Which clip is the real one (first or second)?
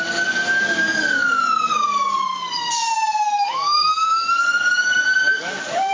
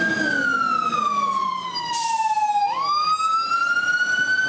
second